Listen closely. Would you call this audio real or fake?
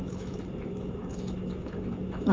fake